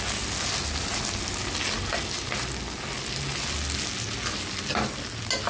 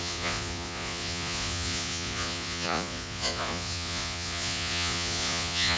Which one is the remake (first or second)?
second